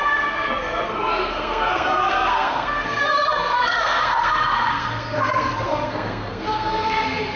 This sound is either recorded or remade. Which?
remade